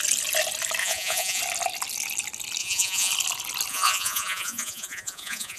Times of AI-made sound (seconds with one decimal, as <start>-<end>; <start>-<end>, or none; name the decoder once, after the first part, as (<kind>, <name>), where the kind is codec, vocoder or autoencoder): 0.8-1.4 (vocoder, Vocos); 2.6-3.1; 3.7-5.6

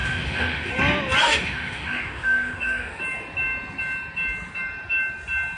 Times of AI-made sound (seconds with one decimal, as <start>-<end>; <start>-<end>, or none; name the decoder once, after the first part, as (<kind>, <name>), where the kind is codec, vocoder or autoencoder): 0.0-0.7 (autoencoder, DAC-VAE); 1.2-3.0

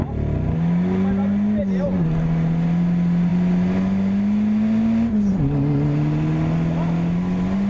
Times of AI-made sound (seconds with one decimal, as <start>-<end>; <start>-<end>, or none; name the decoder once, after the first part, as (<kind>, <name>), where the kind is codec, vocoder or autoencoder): none

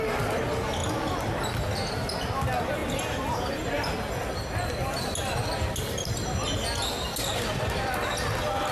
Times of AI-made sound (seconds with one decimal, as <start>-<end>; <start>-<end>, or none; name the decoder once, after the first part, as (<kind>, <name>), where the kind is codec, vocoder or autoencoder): none